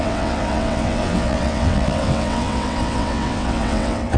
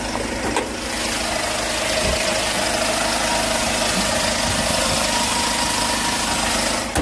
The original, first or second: second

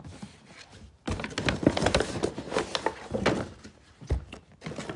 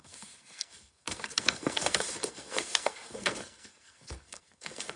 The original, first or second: first